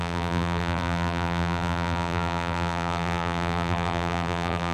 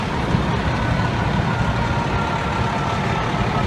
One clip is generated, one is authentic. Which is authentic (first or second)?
second